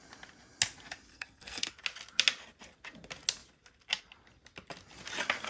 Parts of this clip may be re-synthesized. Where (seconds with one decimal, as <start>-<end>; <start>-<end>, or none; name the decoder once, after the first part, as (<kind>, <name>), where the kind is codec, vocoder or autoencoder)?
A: 1.1-1.7 (codec, SNAC)